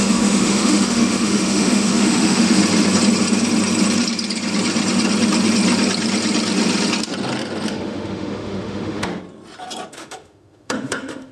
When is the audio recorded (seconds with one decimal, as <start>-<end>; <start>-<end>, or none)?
2.6-7.7; 9.1-9.9